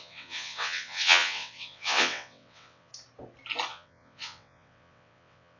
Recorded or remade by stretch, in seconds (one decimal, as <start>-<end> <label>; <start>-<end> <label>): 0.0-2.9 remade; 2.9-3.7 recorded; 3.7-5.6 remade